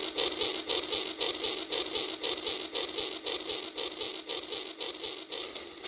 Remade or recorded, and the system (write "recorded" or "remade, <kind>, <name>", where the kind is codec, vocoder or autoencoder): recorded